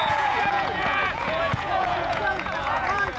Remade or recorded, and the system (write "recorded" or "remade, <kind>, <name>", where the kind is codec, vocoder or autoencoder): remade, vocoder, Vocos